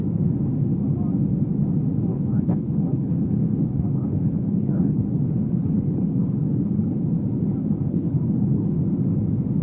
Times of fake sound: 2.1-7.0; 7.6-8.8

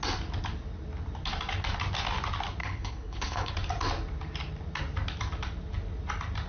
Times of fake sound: 2.6-3.5

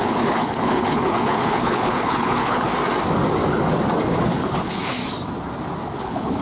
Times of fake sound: 0.0-2.7; 4.1-5.0; 6.0-6.4

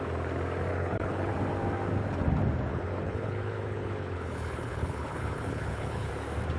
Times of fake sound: 0.7-1.3; 2.7-6.1